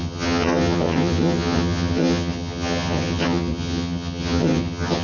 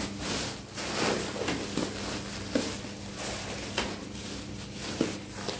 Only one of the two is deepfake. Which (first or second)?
first